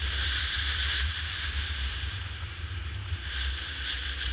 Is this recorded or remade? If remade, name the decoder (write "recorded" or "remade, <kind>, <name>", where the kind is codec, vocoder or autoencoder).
remade, vocoder, BigVGAN v2